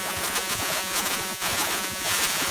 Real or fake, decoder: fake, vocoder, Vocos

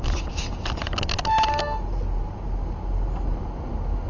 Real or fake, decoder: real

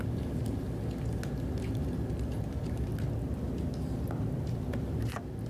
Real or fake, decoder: real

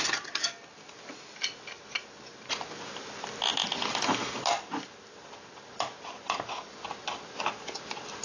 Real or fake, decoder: real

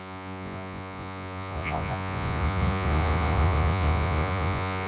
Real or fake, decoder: fake, vocoder, Vocos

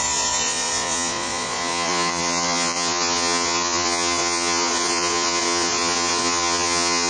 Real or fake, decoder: fake, vocoder, Vocos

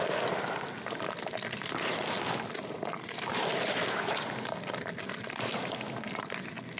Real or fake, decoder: real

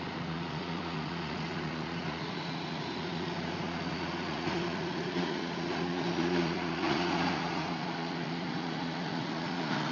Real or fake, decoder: fake, vocoder, Vocos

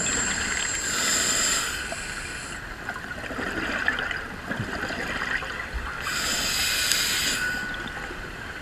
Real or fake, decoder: real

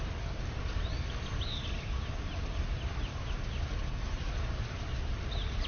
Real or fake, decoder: real